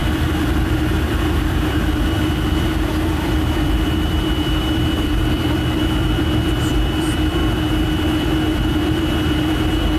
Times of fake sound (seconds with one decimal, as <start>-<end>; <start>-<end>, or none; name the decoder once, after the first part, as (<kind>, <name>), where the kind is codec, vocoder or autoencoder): 0.0-10.0 (vocoder, BigVGAN v2)